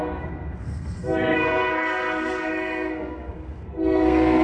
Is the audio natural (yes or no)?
no